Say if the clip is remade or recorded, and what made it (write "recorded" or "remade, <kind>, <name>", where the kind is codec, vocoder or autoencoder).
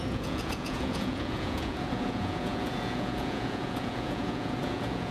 remade, vocoder, Vocos